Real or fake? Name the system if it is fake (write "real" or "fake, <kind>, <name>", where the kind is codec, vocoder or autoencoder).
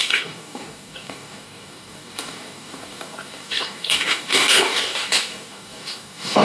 fake, codec, DAC